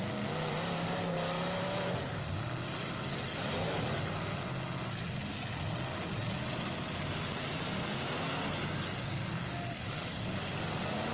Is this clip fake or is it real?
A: real